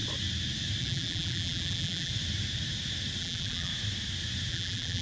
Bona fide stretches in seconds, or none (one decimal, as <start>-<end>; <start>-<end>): 0.0-0.8; 2.1-3.2; 3.7-4.5